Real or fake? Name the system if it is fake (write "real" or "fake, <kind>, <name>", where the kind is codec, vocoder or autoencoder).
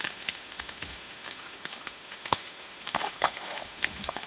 fake, autoencoder, DAC-VAE